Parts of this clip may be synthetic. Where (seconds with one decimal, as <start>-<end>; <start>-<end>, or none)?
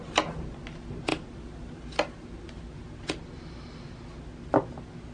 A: none